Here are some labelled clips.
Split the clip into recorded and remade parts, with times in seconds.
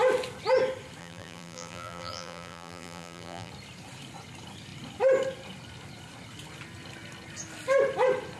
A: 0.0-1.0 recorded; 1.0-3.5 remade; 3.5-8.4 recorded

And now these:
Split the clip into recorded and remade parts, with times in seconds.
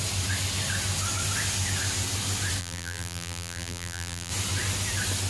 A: 0.0-2.6 recorded; 2.6-4.3 remade; 4.3-5.3 recorded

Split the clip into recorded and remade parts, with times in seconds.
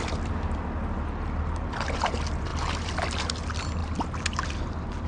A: 0.0-5.1 recorded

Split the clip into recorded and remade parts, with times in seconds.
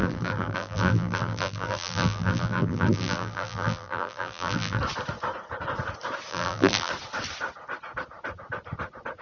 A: 0.0-4.8 remade; 4.8-6.3 recorded; 6.3-6.9 remade; 6.9-9.2 recorded